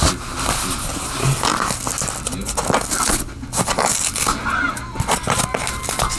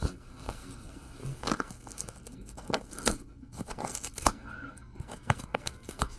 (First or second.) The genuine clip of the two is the first